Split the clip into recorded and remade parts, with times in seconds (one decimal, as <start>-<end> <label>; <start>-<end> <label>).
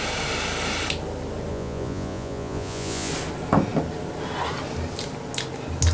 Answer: 0.0-1.5 recorded; 1.5-3.1 remade; 3.1-5.9 recorded